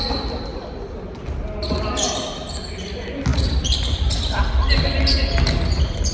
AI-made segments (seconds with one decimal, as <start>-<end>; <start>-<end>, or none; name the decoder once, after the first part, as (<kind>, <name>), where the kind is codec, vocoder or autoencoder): 0.5-1.1 (vocoder, BigVGAN v2); 3.3-4.7